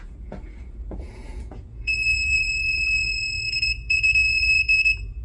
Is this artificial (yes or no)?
yes